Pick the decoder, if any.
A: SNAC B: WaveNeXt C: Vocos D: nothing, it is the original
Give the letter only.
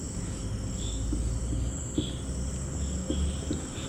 D